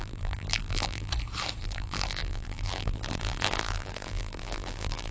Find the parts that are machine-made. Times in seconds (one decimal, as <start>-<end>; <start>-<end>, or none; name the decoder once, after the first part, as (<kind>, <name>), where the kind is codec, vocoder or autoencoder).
0.0-1.1 (vocoder, BigVGAN v2); 1.6-5.1